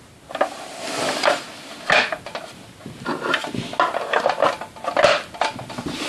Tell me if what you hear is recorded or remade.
recorded